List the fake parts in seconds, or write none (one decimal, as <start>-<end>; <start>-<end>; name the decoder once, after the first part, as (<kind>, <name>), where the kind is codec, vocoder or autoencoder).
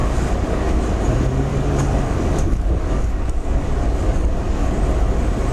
0.0-0.8 (codec, DAC); 1.5-4.8